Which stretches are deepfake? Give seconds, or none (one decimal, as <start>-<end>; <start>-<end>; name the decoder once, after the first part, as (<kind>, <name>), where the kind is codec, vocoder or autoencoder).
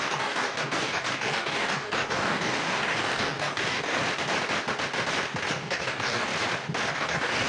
0.0-4.0 (codec, DAC); 5.5-6.3; 6.9-7.5